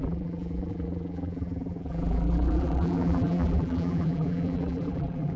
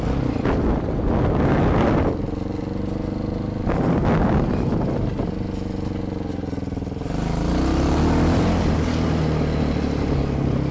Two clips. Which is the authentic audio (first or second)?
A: second